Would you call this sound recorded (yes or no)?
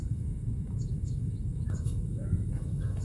no